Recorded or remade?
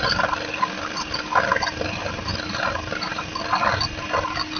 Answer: recorded